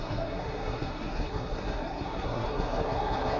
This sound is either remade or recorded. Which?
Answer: remade